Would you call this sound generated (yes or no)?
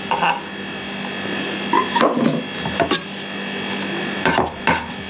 no